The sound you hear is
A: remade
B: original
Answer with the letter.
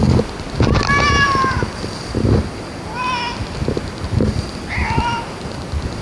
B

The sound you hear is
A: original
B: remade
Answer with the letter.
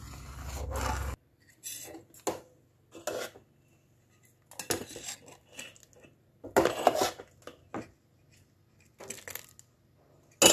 A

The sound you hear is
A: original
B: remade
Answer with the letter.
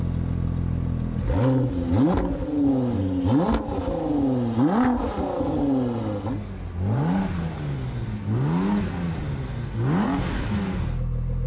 A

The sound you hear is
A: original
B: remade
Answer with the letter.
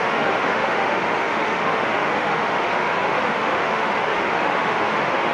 B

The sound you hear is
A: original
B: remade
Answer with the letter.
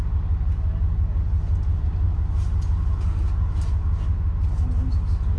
A